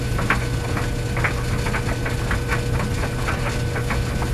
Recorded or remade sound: recorded